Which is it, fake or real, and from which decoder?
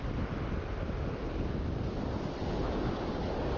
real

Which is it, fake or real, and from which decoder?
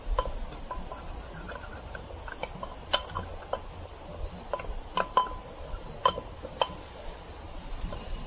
real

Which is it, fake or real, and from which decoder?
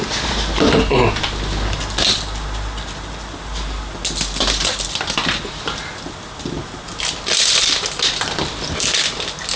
real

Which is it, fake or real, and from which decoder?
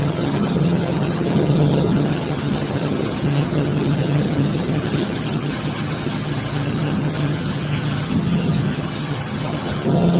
fake, vocoder, HiFi-GAN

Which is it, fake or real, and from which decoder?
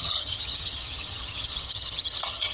fake, vocoder, HiFi-GAN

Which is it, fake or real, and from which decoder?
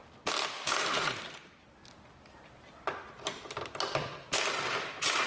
real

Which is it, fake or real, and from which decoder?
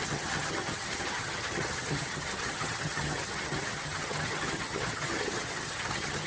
fake, vocoder, HiFi-GAN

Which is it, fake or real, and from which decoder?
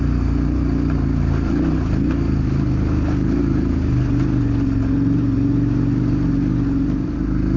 real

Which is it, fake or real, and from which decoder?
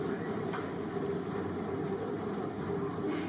real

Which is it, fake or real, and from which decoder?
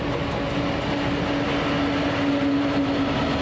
real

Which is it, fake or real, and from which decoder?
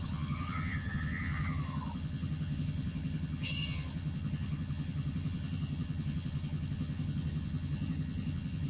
fake, vocoder, HiFi-GAN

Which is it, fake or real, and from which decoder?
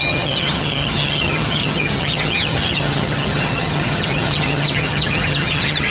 fake, vocoder, HiFi-GAN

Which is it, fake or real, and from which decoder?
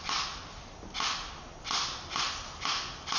real